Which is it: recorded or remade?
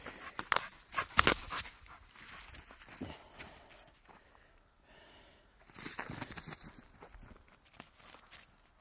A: recorded